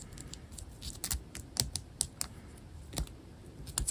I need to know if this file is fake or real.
real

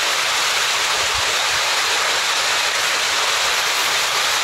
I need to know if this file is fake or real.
real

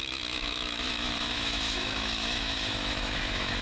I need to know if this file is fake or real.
fake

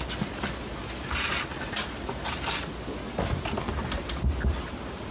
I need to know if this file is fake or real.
real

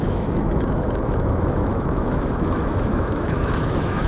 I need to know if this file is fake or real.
fake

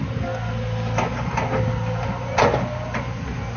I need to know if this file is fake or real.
real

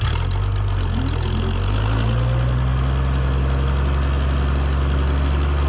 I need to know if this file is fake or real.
real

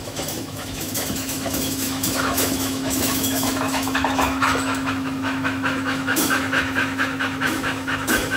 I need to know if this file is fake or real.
fake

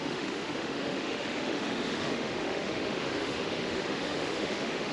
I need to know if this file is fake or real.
fake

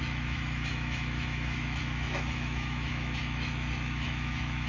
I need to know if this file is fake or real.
fake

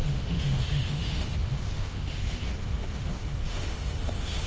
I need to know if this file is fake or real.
fake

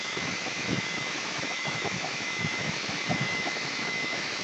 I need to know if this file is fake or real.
fake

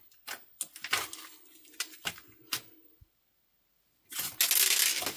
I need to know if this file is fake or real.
real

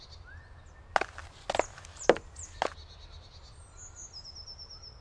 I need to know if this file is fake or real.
real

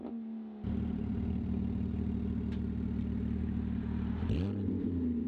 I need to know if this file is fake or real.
real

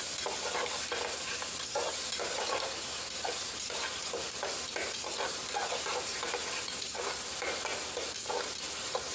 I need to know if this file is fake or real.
real